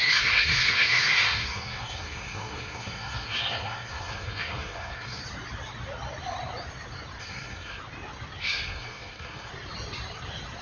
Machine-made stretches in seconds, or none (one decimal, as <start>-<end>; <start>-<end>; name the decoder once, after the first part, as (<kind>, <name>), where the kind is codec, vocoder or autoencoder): 0.0-5.2 (codec, SNAC); 7.2-7.8; 8.4-9.5